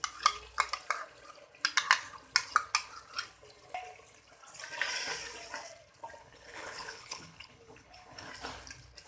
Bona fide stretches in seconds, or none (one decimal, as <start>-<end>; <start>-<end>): 0.0-6.2; 8.3-9.1